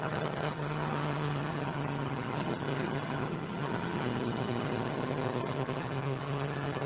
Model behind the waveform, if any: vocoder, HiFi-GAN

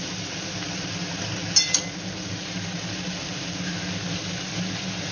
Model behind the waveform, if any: none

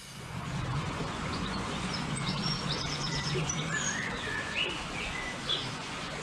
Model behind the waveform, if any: vocoder, Vocos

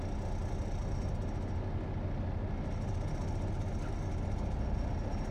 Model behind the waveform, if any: none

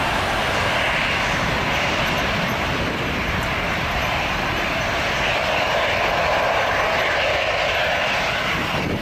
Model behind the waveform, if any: none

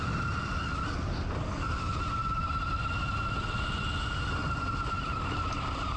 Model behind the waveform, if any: none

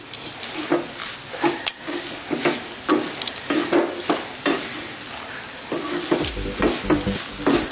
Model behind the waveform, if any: none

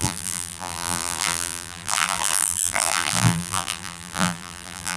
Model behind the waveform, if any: vocoder, BigVGAN v2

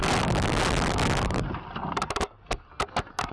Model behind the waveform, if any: none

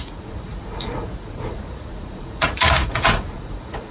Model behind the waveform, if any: vocoder, Vocos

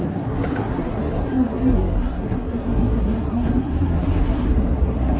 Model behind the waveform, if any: codec, SNAC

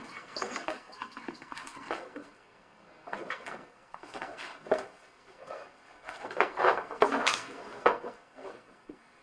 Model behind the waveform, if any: codec, SNAC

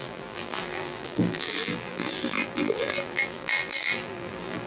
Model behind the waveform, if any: vocoder, BigVGAN v2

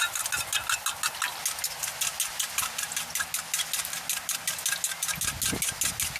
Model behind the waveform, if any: none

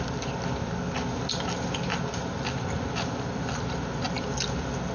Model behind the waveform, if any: none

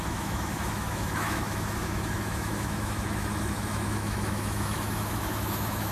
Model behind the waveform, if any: autoencoder, DAC-VAE